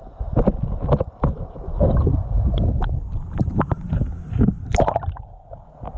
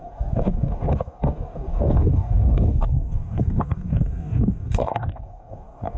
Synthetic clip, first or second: second